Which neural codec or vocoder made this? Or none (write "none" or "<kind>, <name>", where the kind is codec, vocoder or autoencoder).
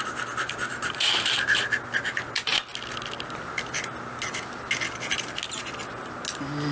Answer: none